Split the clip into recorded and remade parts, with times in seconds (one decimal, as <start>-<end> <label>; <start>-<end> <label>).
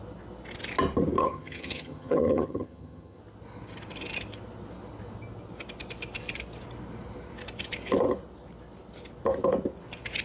0.0-1.2 recorded; 1.2-3.2 remade; 3.2-10.2 recorded